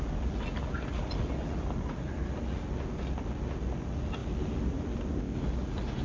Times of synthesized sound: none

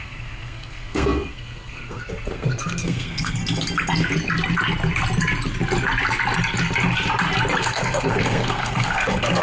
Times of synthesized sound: 0.0-3.4 (codec, SNAC); 7.6-9.4